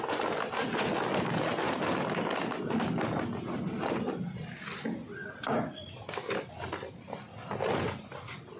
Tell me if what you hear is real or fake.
real